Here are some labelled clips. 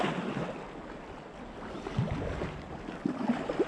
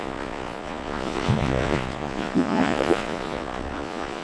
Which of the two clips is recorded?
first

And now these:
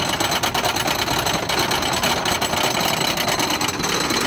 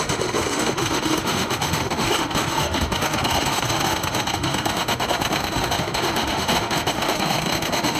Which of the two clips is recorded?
first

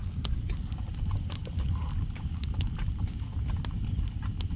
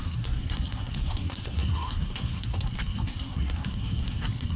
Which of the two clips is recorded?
first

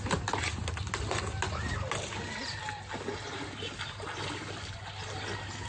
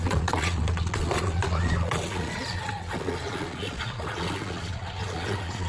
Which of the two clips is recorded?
first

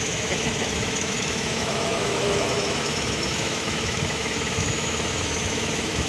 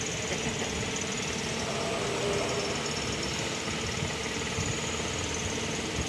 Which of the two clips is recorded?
second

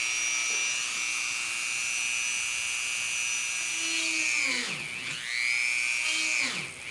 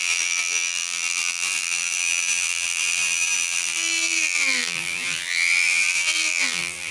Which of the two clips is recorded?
first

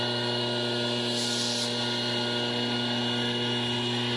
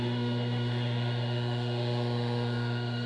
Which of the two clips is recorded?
first